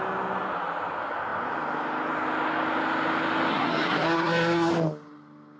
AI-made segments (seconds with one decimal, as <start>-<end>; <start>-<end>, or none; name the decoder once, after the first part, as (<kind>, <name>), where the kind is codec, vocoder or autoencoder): 3.5-4.7 (codec, SNAC)